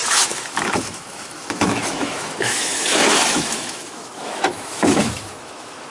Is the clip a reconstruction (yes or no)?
yes